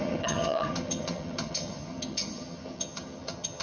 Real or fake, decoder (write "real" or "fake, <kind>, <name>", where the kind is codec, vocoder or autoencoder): fake, vocoder, HiFi-GAN